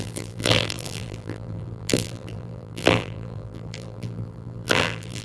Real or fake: fake